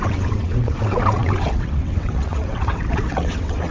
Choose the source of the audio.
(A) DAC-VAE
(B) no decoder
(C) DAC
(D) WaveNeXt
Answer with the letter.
D